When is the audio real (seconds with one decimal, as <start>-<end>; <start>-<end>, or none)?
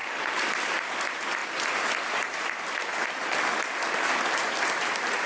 0.0-5.3